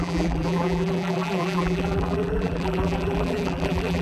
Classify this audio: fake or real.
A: fake